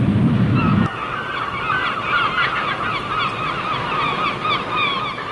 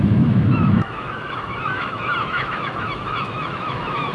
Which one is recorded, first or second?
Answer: first